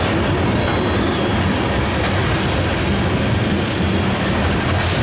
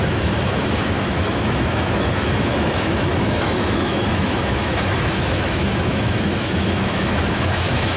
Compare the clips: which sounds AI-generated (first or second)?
second